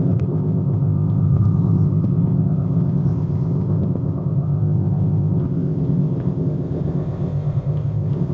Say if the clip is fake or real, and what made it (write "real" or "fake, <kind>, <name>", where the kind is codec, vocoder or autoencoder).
fake, codec, ZipCodec